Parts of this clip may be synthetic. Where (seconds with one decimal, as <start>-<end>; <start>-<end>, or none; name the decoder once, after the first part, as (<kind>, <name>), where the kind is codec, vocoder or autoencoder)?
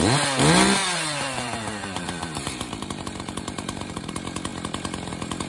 0.8-4.1 (vocoder, BigVGAN v2)